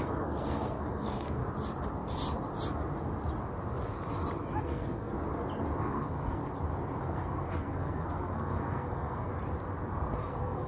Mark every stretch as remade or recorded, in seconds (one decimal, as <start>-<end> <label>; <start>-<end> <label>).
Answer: 0.0-1.4 remade; 1.4-4.6 recorded; 4.6-5.1 remade; 5.1-5.8 recorded; 5.8-6.4 remade; 6.4-7.0 recorded; 7.0-9.3 remade; 9.3-10.2 recorded; 10.2-10.7 remade